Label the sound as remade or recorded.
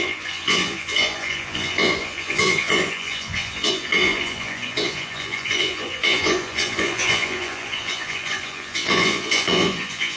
remade